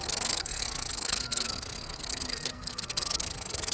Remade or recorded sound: remade